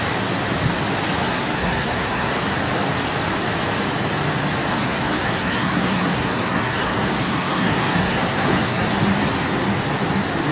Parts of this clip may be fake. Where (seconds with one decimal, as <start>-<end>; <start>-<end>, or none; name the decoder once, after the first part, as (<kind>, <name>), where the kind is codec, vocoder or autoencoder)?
1.2-2.3 (codec, SNAC); 4.7-8.9